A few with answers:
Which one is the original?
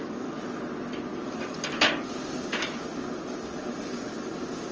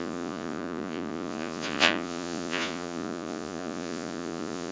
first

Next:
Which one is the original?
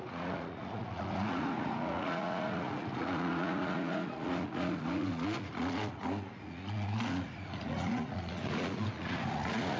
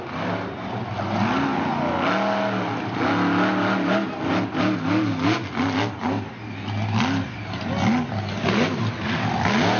second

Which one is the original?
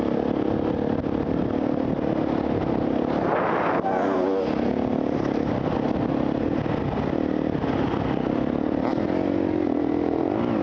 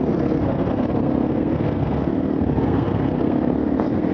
first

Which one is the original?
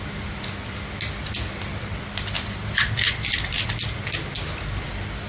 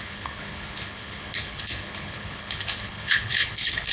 first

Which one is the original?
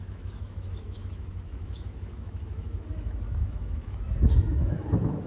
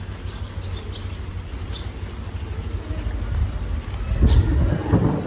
second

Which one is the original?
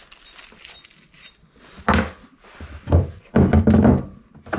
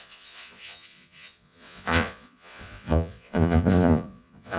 first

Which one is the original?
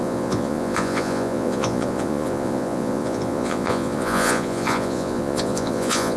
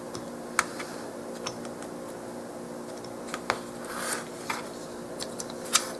second